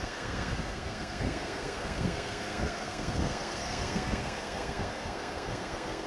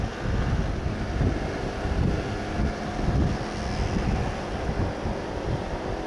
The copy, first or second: first